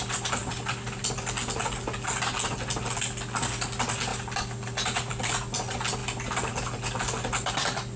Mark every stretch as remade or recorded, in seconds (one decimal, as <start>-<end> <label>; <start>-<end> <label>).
0.0-0.4 recorded; 0.4-1.0 remade; 1.0-4.1 recorded; 4.1-5.1 remade; 5.1-8.0 recorded